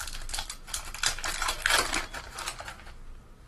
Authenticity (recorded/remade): recorded